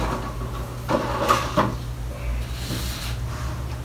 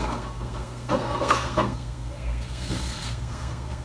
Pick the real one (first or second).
first